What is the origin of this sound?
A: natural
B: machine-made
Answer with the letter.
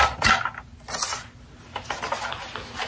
A